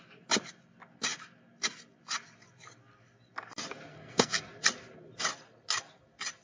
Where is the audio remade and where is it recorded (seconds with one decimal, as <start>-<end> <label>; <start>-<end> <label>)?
0.0-3.9 recorded; 3.9-4.4 remade; 4.4-6.4 recorded